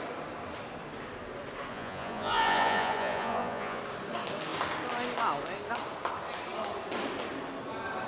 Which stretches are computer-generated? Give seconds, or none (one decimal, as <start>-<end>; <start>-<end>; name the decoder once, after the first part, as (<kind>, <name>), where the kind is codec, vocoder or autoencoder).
1.7-3.8 (vocoder, Vocos)